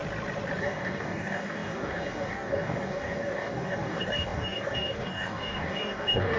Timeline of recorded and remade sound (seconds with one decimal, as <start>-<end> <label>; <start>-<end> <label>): 0.0-0.6 recorded; 0.6-6.4 remade